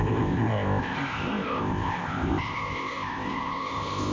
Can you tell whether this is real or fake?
fake